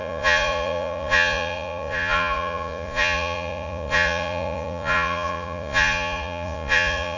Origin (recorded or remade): remade